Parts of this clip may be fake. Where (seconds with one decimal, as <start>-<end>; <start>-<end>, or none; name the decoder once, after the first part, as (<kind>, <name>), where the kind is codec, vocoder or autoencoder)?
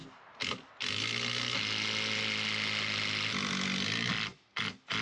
0.0-0.7 (vocoder, BigVGAN v2)